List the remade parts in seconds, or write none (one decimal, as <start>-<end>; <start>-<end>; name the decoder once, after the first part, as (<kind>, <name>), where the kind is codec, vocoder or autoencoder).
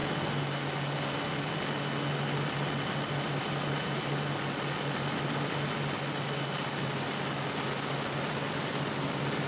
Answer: none